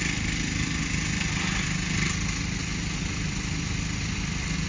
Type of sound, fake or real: fake